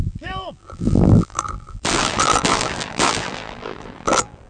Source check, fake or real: fake